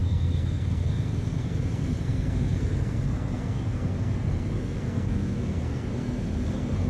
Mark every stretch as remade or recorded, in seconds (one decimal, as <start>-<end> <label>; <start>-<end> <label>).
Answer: 0.0-6.9 remade